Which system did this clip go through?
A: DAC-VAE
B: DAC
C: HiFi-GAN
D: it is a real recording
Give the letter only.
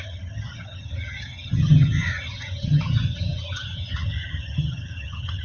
C